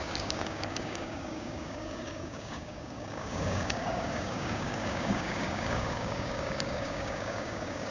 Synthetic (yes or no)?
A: yes